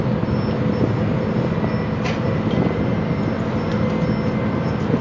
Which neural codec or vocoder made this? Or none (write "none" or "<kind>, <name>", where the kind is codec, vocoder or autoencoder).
none